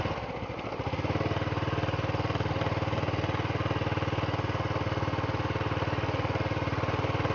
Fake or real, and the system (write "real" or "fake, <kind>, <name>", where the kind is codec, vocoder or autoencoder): real